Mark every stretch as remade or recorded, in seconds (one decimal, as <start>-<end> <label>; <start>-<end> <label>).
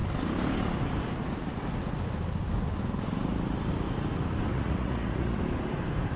0.0-4.5 recorded; 4.5-5.4 remade; 5.4-6.2 recorded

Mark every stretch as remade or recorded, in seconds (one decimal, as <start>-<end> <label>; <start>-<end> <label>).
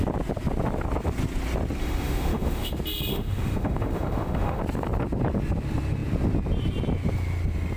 0.0-1.8 recorded; 1.8-2.7 remade; 2.7-3.1 recorded; 3.1-4.6 remade; 4.6-7.8 recorded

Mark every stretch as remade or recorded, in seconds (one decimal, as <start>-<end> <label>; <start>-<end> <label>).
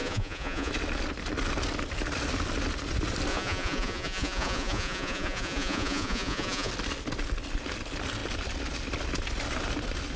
0.0-0.7 remade; 0.7-3.3 recorded; 3.3-6.7 remade; 6.7-10.2 recorded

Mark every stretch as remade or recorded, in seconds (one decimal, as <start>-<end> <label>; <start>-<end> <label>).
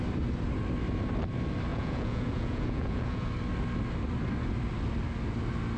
0.0-1.7 recorded; 1.7-3.3 remade; 3.3-5.8 recorded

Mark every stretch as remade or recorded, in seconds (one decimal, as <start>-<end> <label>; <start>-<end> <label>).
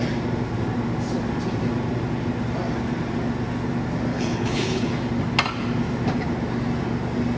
0.0-4.1 recorded; 4.1-4.9 remade; 4.9-7.4 recorded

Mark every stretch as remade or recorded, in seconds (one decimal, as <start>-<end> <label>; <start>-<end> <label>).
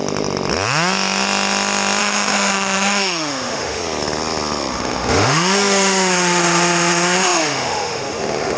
0.0-2.0 recorded; 2.0-3.8 remade; 3.8-4.7 recorded; 4.7-8.6 remade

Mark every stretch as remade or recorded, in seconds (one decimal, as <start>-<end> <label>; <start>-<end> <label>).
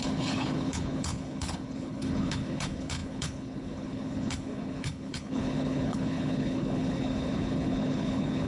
0.0-8.5 remade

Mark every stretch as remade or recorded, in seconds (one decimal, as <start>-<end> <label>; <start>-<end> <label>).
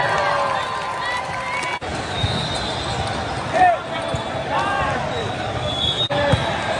0.0-1.9 recorded; 1.9-2.5 remade; 2.5-5.2 recorded; 5.2-6.3 remade; 6.3-6.8 recorded